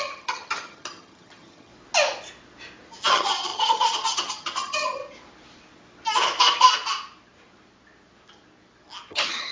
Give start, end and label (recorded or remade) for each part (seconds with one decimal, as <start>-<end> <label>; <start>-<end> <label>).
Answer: 0.0-1.7 remade; 1.7-3.1 recorded; 3.1-5.0 remade; 5.0-9.1 recorded; 9.1-9.5 remade